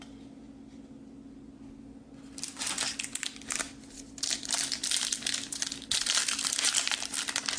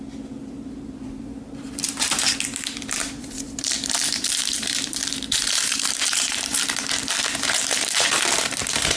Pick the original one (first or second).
first